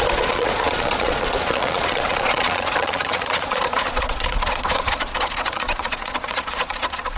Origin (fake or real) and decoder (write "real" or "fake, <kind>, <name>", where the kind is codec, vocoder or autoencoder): fake, vocoder, Vocos